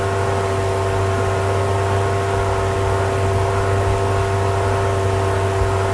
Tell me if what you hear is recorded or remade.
recorded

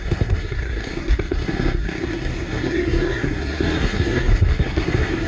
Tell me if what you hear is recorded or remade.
remade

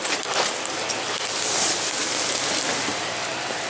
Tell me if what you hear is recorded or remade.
recorded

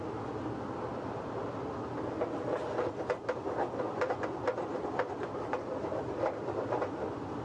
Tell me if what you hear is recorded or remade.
recorded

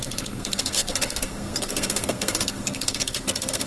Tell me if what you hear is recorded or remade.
remade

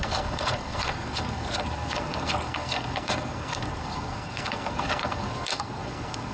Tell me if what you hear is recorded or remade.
remade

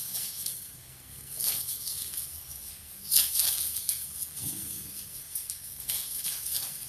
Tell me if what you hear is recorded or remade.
remade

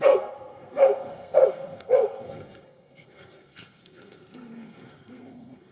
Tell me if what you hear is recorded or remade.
remade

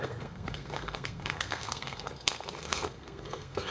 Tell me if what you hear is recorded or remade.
remade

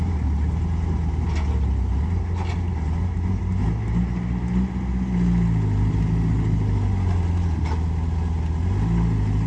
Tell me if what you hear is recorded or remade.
recorded